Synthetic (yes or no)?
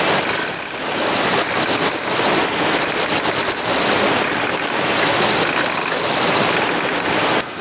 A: no